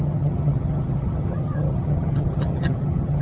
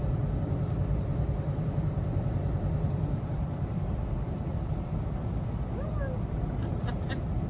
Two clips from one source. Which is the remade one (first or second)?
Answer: first